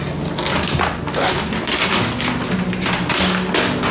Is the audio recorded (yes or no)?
yes